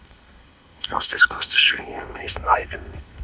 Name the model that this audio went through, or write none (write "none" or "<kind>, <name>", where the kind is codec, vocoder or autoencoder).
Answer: codec, SNAC